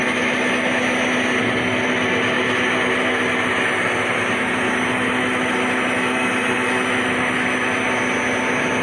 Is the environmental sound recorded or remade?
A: recorded